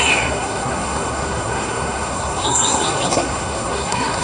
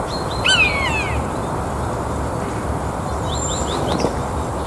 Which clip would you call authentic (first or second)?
second